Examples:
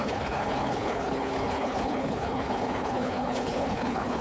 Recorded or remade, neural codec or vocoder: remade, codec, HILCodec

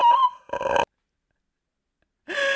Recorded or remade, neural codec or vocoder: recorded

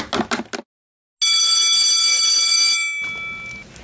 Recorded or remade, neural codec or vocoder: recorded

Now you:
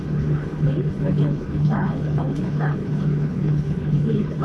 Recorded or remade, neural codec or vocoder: remade, codec, HILCodec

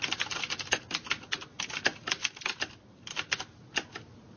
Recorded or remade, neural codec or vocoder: recorded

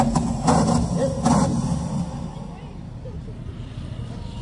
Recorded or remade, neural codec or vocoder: recorded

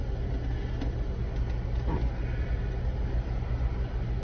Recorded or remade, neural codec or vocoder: recorded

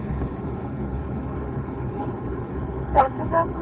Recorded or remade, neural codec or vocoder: remade, codec, HILCodec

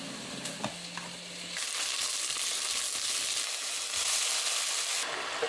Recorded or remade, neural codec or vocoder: recorded